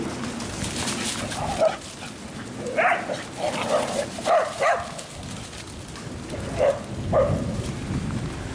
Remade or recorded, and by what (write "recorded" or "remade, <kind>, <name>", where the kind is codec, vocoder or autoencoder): recorded